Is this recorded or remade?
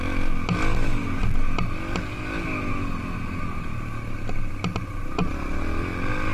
recorded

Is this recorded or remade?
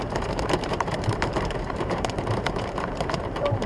remade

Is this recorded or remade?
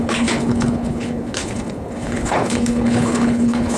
remade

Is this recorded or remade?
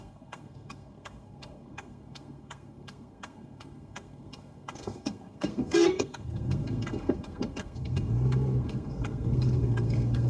remade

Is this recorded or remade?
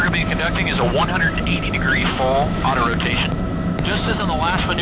remade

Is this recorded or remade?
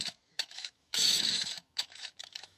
remade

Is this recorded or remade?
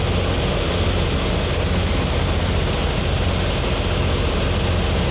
recorded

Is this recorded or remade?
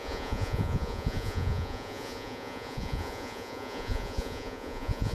remade